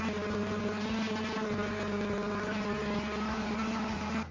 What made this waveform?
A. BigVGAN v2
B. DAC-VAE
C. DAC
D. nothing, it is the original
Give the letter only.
D